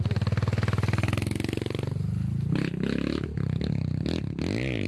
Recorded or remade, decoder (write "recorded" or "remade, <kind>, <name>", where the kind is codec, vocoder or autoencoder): recorded